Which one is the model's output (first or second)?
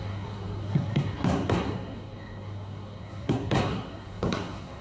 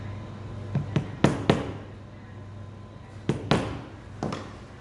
first